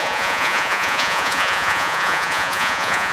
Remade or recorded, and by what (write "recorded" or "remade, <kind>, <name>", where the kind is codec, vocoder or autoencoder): remade, vocoder, Vocos